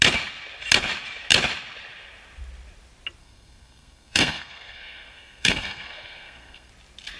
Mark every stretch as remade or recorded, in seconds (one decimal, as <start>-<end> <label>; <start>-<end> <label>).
0.0-3.2 recorded; 3.2-6.7 remade; 6.7-7.2 recorded